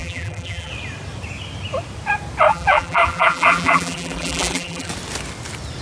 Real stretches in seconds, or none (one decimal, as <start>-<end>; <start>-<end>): 0.7-2.5; 4.9-5.8